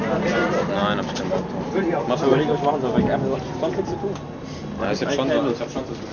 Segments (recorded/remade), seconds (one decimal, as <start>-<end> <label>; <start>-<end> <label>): 0.0-6.1 recorded